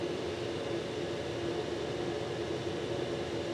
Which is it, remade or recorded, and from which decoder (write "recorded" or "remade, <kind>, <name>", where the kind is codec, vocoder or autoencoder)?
recorded